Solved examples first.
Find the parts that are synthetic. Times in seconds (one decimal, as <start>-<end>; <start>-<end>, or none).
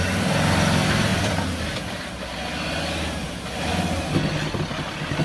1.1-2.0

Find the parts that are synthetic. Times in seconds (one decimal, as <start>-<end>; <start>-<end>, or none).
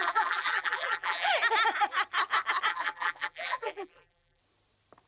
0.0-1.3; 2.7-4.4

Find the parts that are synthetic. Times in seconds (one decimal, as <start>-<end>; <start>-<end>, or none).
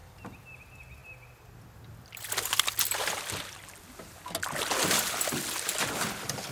none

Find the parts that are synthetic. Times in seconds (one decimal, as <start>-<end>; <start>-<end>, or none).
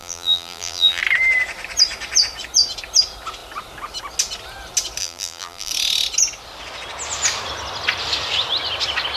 0.0-1.0; 5.0-5.7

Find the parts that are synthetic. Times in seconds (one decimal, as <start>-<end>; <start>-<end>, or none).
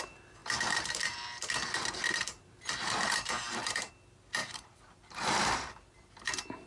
0.4-3.9; 4.4-5.5